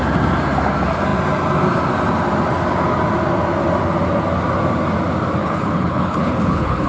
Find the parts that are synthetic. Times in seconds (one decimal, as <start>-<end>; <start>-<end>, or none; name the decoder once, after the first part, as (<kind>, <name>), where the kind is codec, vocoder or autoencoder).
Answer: 5.4-6.9 (codec, HILCodec)